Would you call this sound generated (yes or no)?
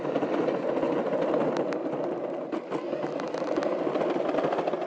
no